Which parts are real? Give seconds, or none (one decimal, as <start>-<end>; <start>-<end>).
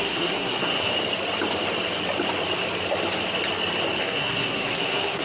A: 0.9-4.0